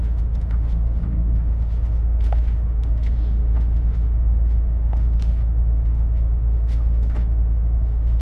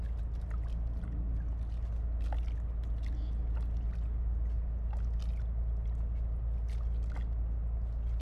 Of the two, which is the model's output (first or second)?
first